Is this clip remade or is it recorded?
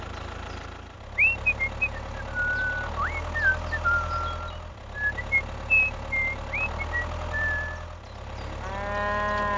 recorded